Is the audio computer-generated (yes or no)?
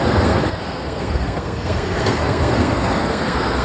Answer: yes